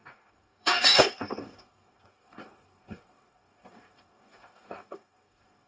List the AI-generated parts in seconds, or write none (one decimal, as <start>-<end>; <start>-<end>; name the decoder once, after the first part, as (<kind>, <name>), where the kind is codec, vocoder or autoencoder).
0.0-5.7 (codec, DAC)